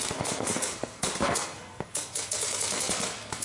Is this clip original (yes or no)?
no